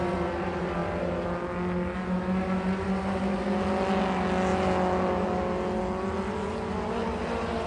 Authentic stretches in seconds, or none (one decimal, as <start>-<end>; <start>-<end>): 0.0-7.0